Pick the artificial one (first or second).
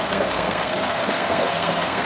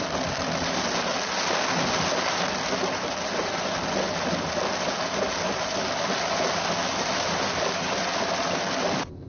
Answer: first